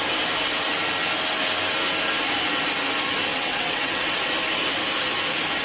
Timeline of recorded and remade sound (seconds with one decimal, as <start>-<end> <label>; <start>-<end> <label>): 0.0-3.3 recorded; 3.3-4.2 remade; 4.2-5.6 recorded